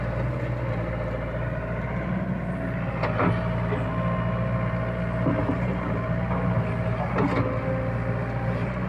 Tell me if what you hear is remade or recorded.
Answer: recorded